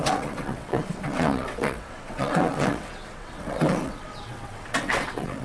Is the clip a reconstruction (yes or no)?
yes